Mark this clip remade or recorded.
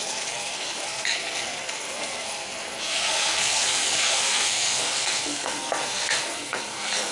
remade